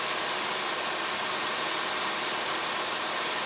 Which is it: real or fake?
real